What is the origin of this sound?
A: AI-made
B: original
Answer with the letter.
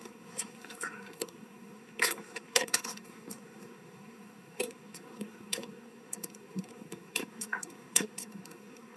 A